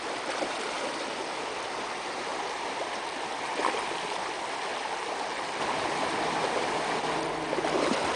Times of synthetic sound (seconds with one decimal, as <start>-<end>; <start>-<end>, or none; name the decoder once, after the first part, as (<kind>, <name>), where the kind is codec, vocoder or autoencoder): 2.3-2.9 (vocoder, BigVGAN v2)